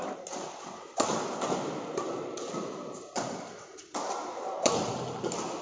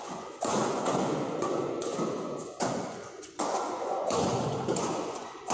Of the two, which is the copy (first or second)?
second